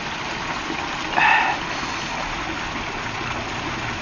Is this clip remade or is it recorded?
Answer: recorded